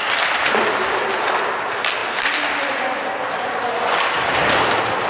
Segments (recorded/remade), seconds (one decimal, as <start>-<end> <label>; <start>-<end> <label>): 0.0-5.1 recorded